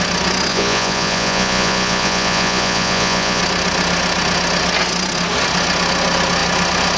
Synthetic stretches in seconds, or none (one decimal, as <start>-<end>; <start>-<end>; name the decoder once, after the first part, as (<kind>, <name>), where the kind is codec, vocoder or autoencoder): 0.5-3.4 (vocoder, Vocos)